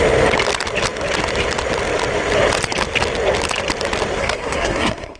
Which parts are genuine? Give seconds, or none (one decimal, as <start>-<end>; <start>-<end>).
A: 0.0-4.2